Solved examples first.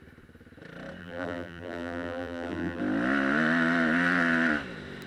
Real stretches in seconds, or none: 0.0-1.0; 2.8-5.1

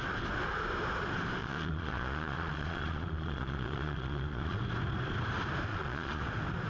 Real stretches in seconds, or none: 0.0-1.4; 4.6-5.7; 6.2-6.7

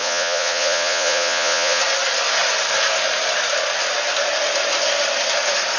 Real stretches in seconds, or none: 1.8-5.8

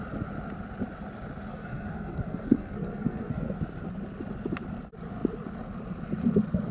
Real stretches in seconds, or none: 0.0-1.5; 3.6-6.7

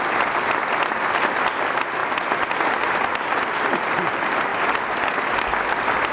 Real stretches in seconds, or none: 0.0-6.1

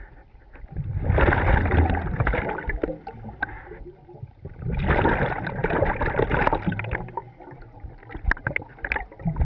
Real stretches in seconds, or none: 0.0-9.4

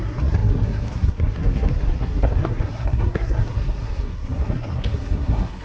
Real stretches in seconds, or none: none

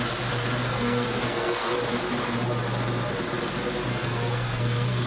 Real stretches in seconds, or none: 0.0-0.6; 1.7-3.9